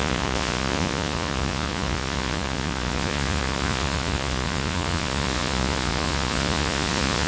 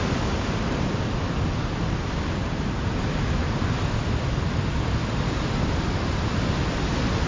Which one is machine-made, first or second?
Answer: first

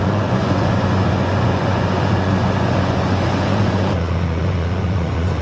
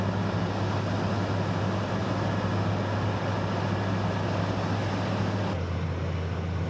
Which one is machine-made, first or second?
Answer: first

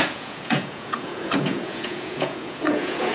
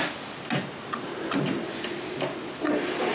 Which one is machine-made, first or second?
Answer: first